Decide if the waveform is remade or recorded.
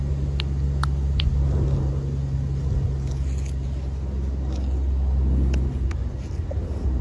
recorded